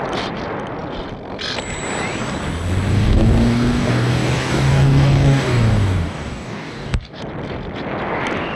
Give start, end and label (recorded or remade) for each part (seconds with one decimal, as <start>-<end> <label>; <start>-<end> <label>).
0.0-2.9 recorded; 2.9-7.2 remade; 7.2-8.6 recorded